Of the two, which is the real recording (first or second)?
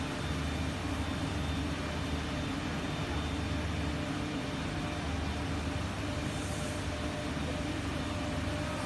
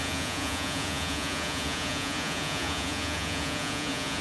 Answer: first